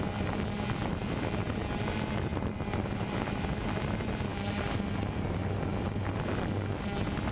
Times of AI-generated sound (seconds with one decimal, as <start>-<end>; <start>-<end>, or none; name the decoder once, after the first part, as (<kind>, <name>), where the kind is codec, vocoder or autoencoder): none

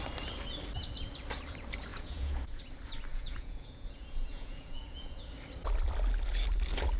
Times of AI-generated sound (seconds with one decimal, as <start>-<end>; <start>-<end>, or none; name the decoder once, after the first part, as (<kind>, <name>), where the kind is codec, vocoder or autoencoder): 1.9-2.6 (vocoder, Vocos); 3.1-5.3

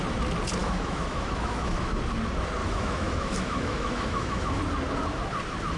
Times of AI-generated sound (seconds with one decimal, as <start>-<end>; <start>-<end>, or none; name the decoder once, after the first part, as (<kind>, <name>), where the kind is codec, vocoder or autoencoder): 0.6-2.0 (autoencoder, DAC-VAE); 2.6-4.6